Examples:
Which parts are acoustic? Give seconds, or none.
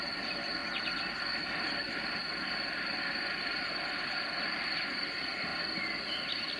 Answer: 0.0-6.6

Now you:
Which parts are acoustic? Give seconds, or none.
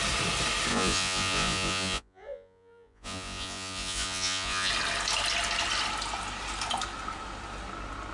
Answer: 0.0-0.7; 4.7-8.1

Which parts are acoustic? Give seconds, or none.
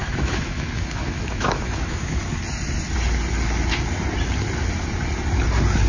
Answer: 2.2-5.9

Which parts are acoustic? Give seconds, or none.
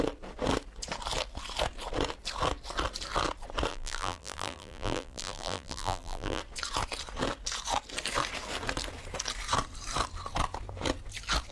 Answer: 0.0-3.7; 6.4-11.5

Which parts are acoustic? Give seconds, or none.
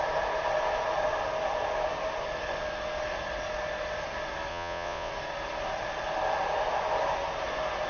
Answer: 0.0-4.5; 5.1-7.9